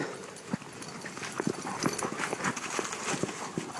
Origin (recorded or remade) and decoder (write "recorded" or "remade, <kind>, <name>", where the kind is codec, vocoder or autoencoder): recorded